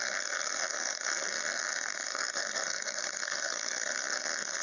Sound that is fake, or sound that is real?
fake